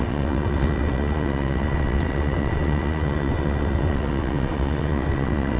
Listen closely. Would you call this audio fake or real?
fake